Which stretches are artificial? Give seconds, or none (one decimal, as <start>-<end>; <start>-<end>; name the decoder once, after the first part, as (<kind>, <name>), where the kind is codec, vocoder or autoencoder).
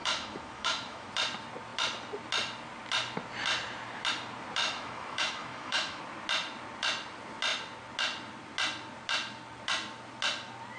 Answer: 0.0-1.1 (autoencoder, DAC-VAE); 4.6-6.0